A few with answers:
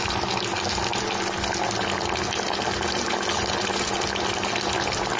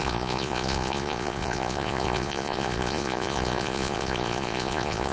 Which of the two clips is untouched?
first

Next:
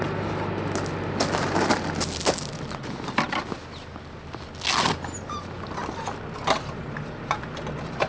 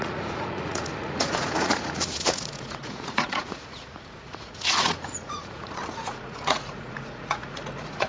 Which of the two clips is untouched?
first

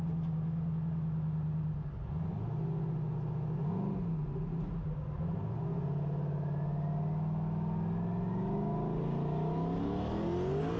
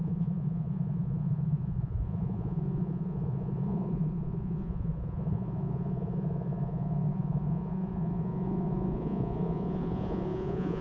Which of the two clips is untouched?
first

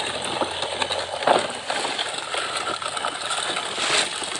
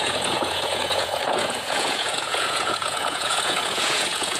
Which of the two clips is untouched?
first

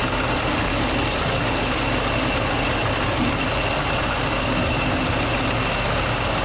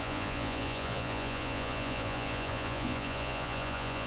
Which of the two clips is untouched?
first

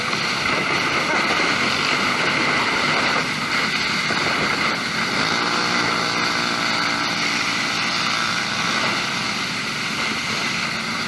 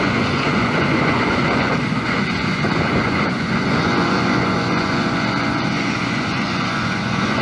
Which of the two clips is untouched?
first